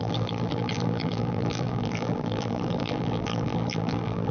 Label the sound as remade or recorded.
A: remade